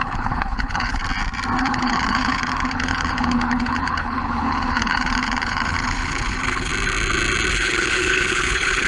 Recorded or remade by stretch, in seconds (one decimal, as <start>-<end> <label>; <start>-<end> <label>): 0.0-1.0 remade; 1.0-1.6 recorded; 1.6-6.7 remade; 6.7-7.5 recorded; 7.5-8.9 remade